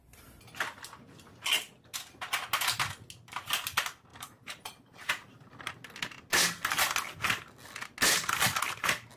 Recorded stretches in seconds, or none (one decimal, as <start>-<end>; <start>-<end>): 0.0-4.1; 5.7-9.2